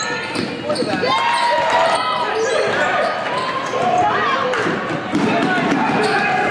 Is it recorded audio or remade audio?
recorded